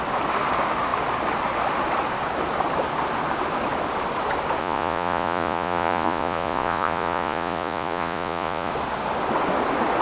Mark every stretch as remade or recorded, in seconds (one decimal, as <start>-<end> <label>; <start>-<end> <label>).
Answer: 0.0-4.6 recorded; 4.6-8.7 remade; 8.7-10.0 recorded